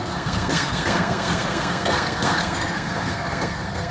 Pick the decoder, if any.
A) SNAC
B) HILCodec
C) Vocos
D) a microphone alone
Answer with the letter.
A